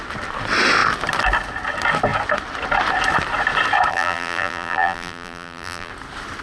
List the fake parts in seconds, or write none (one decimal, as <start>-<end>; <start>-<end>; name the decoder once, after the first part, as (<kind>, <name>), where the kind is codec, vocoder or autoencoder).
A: 3.9-5.9 (vocoder, BigVGAN v2)